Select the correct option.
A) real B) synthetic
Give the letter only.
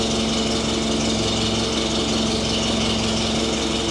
A